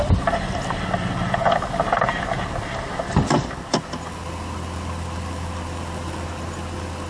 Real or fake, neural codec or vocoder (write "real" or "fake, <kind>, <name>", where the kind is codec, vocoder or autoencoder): real